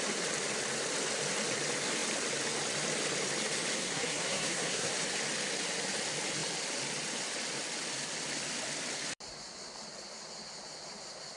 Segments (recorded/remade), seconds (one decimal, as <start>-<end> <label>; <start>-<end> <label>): 0.0-3.8 recorded; 3.8-4.9 remade; 4.9-11.4 recorded